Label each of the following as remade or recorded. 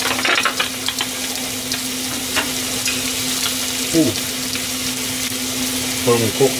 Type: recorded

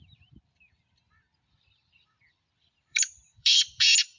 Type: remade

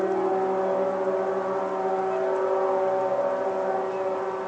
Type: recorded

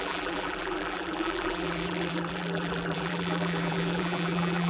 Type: remade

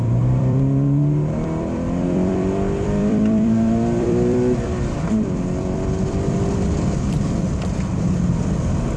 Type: remade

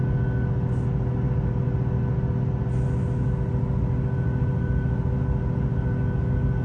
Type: recorded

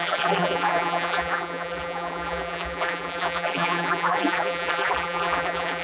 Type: remade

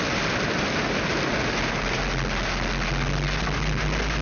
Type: recorded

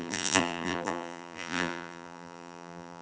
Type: remade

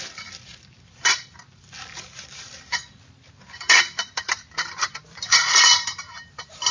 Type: remade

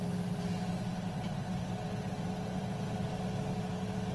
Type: recorded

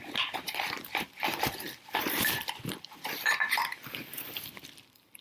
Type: remade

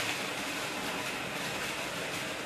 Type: remade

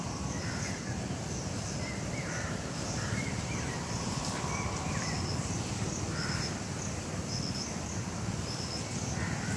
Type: remade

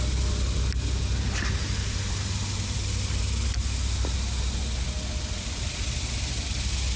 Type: recorded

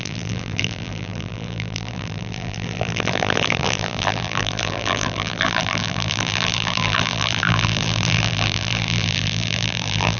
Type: remade